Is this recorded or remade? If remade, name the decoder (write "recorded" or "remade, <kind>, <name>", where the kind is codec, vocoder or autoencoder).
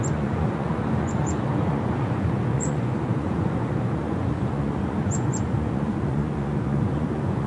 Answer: remade, vocoder, Vocos